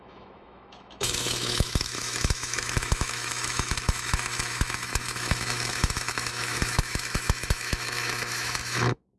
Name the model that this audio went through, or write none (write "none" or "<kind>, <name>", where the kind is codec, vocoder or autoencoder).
autoencoder, DAC-VAE